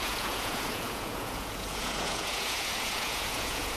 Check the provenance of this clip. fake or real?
fake